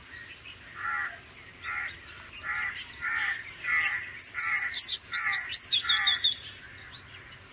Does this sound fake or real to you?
real